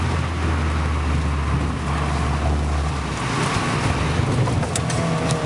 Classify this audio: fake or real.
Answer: real